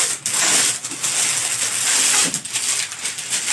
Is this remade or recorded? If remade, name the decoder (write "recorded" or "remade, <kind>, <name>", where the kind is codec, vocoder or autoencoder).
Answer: recorded